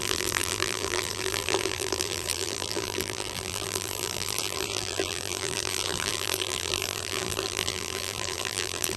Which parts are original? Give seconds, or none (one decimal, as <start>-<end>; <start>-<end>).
none